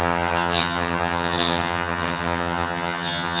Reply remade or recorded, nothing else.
remade